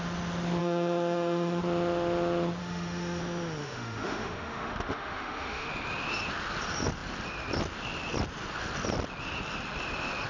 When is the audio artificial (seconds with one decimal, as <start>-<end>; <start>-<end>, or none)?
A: 0.6-1.6; 2.6-3.2; 3.6-5.7